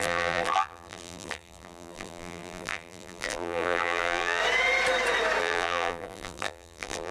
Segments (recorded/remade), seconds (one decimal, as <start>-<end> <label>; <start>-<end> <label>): 0.0-4.4 remade; 4.4-5.4 recorded; 5.4-7.1 remade